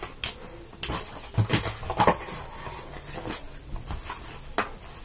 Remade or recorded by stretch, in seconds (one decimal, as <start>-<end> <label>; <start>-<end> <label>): 0.0-5.0 recorded